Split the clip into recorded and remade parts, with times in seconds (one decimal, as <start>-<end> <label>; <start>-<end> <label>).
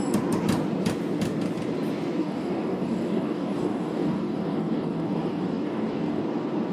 0.0-2.2 recorded; 2.2-6.2 remade; 6.2-6.7 recorded